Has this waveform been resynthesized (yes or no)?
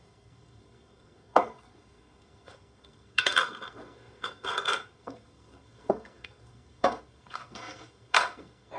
yes